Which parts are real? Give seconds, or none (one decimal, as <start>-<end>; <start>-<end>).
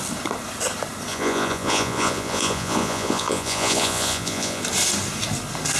0.0-1.1; 4.6-5.8